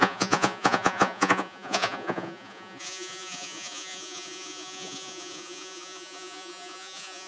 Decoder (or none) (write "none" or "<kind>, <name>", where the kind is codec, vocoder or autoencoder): vocoder, Vocos